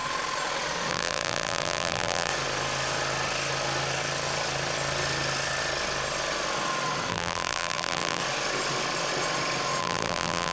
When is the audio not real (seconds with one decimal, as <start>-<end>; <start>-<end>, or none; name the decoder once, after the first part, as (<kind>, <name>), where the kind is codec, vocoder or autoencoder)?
0.9-2.3 (vocoder, BigVGAN v2); 7.1-8.2; 9.8-10.5